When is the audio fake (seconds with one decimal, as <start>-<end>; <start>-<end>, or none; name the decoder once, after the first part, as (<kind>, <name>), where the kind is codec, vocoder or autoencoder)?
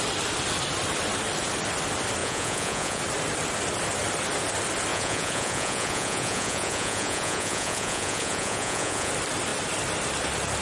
2.2-3.0 (vocoder, Vocos); 4.9-9.1